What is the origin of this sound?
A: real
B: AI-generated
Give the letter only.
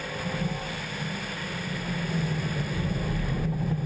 A